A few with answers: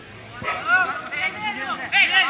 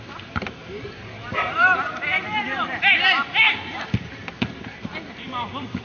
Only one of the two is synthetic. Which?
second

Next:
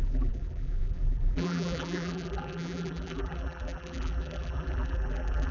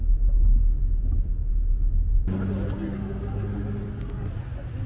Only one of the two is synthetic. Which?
first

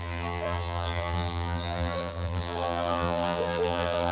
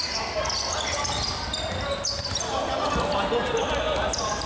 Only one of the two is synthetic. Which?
first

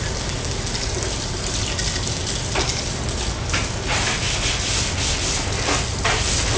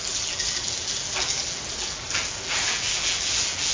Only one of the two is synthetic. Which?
second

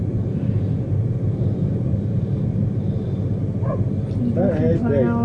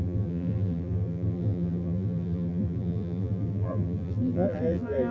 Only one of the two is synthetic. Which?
second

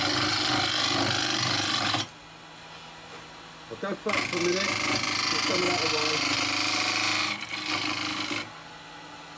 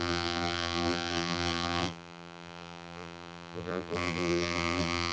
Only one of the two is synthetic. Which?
second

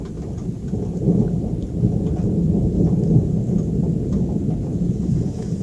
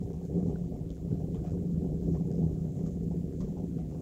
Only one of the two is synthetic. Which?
second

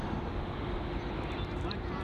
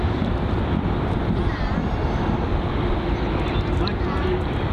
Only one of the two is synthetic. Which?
second